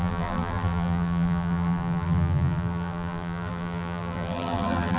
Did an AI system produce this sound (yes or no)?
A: yes